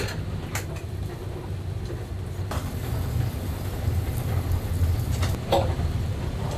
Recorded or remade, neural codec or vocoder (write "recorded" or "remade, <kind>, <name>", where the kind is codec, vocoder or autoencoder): recorded